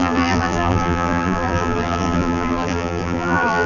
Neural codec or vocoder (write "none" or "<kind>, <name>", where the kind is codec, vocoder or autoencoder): vocoder, BigVGAN v2